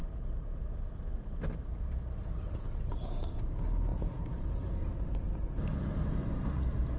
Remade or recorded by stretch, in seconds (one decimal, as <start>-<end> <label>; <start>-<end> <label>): 0.0-3.9 recorded; 3.9-5.1 remade; 5.1-7.0 recorded